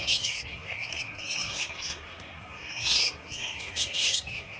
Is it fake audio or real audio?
fake